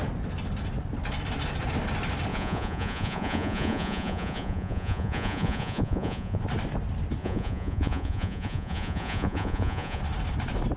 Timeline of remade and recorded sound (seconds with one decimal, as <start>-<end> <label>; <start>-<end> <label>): 0.0-2.3 recorded; 2.3-6.4 remade; 6.4-7.2 recorded; 7.2-10.0 remade; 10.0-10.8 recorded